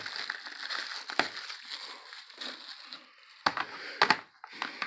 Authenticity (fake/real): real